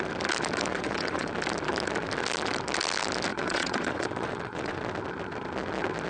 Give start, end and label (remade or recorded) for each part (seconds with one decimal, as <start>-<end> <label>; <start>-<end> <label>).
0.0-0.7 recorded; 0.7-1.3 remade; 1.3-3.3 recorded; 3.3-4.8 remade; 4.8-6.1 recorded